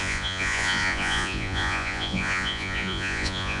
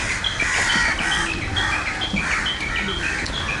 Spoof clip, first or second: first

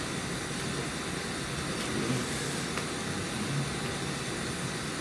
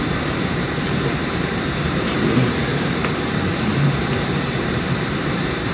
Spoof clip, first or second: second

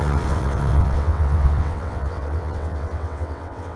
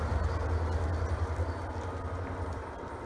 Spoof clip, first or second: first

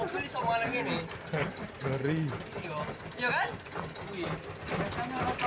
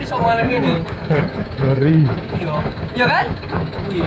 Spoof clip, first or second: second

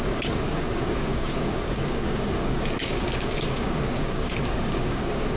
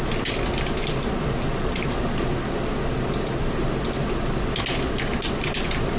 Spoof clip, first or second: first